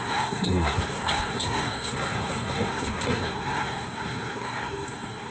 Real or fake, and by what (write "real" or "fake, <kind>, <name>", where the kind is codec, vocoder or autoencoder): fake, codec, SNAC